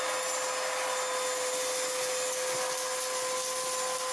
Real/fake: real